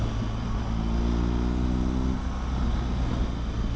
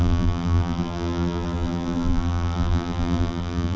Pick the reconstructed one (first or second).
second